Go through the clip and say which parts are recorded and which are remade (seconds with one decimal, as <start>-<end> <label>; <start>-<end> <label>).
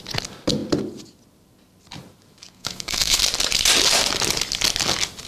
0.0-2.4 recorded; 2.4-3.2 remade; 3.2-5.3 recorded